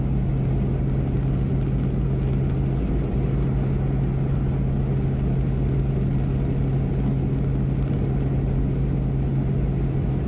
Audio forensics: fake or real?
real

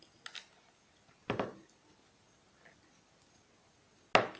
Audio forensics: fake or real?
real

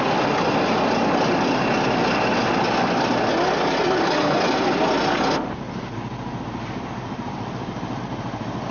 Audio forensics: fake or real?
real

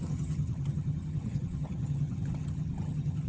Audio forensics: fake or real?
fake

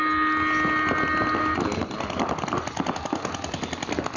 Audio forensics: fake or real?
real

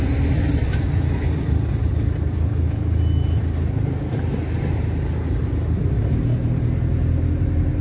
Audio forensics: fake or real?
real